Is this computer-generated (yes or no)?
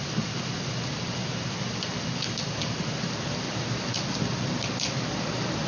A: no